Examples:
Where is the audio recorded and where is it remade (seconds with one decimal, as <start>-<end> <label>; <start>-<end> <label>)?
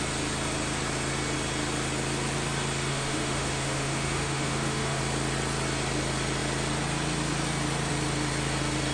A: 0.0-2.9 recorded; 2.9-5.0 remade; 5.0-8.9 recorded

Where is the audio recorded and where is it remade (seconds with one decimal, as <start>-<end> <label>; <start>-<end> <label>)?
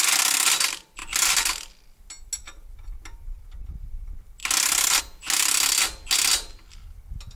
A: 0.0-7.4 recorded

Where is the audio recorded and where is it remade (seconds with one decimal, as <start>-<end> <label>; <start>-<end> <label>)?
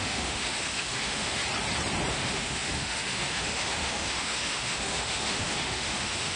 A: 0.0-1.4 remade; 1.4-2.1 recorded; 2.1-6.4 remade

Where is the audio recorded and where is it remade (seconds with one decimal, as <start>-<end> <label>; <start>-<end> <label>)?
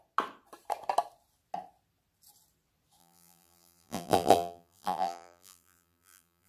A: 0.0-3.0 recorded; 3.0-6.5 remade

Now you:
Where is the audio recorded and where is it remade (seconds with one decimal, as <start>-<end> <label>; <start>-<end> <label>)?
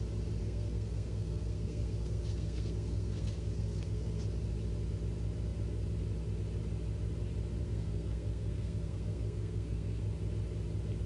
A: 0.0-0.4 recorded; 0.4-4.2 remade; 4.2-7.6 recorded; 7.6-10.0 remade; 10.0-11.1 recorded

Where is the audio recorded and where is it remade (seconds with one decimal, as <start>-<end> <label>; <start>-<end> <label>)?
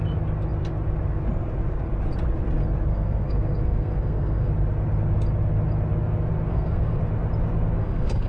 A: 0.0-2.9 recorded; 2.9-4.5 remade; 4.5-6.5 recorded; 6.5-7.0 remade; 7.0-7.8 recorded; 7.8-8.3 remade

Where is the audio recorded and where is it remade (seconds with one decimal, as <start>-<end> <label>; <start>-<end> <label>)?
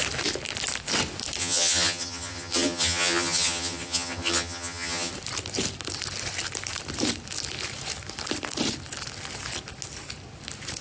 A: 0.0-1.4 recorded; 1.4-5.1 remade; 5.1-10.8 recorded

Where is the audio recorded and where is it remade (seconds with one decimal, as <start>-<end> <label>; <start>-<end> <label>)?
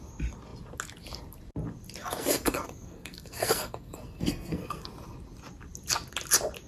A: 0.0-2.0 recorded; 2.0-4.9 remade; 4.9-6.7 recorded